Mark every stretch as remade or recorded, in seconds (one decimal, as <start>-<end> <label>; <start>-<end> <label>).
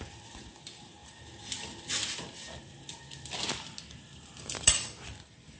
0.0-1.0 remade; 1.0-4.4 recorded; 4.4-5.6 remade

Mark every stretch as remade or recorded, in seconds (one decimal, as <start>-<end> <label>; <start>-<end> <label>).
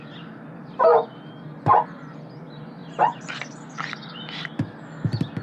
0.0-5.4 recorded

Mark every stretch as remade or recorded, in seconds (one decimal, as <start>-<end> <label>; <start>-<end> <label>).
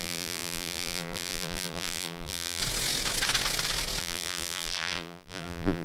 0.0-2.6 remade; 2.6-4.0 recorded; 4.0-5.8 remade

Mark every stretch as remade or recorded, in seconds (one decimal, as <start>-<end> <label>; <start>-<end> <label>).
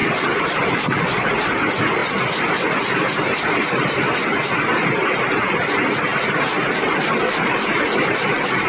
0.0-8.7 recorded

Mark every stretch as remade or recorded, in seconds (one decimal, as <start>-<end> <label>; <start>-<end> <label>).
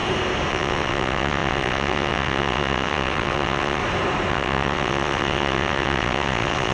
0.0-0.5 recorded; 0.5-3.8 remade; 3.8-4.3 recorded; 4.3-6.7 remade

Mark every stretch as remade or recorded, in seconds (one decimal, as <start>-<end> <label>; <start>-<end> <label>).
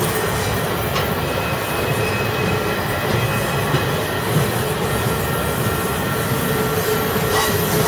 0.0-7.9 recorded